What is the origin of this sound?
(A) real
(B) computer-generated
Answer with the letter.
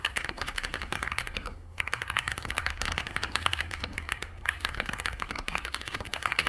B